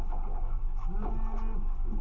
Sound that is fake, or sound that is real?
real